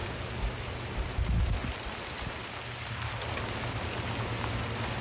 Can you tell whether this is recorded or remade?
recorded